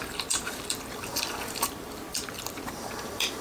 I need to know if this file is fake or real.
fake